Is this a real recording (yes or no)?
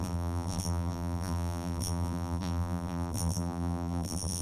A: no